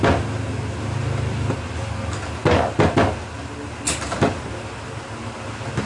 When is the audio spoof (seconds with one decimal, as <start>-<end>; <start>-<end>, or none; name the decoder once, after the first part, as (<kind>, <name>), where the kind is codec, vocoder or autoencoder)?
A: none